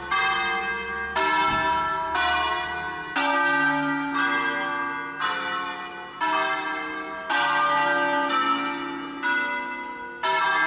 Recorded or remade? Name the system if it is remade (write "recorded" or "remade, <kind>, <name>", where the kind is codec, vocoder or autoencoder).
recorded